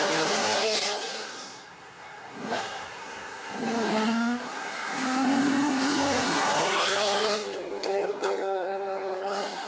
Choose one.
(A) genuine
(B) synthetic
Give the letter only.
B